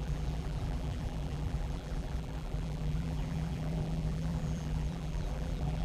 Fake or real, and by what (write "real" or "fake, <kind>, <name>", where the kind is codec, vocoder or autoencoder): fake, vocoder, BigVGAN v2